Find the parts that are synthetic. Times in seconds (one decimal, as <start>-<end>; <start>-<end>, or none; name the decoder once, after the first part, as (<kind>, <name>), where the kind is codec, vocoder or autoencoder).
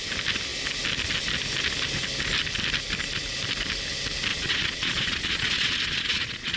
4.3-6.6 (vocoder, Vocos)